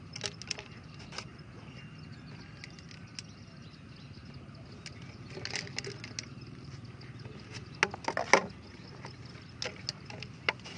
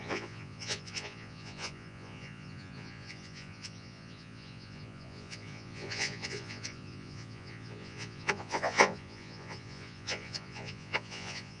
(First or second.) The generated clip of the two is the second